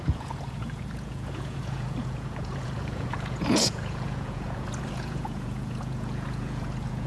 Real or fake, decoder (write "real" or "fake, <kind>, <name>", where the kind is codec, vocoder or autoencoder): fake, vocoder, Vocos